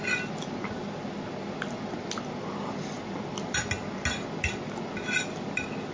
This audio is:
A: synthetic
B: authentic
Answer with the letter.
B